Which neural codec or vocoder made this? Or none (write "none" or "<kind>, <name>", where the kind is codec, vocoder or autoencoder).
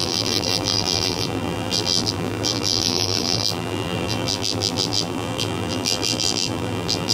vocoder, BigVGAN v2